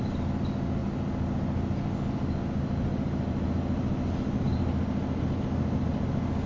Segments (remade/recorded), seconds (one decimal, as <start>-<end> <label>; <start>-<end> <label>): 0.0-6.5 recorded